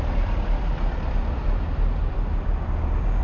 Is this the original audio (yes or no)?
no